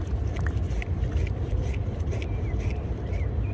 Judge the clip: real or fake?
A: real